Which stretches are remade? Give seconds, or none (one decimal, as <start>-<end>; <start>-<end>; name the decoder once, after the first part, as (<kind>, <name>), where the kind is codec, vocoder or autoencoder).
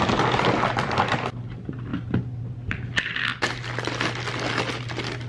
1.9-2.4 (vocoder, BigVGAN v2)